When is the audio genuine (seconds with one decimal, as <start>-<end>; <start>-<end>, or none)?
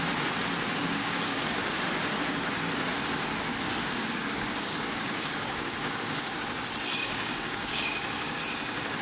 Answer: 0.0-1.0; 1.8-3.8; 6.4-7.0; 8.4-9.0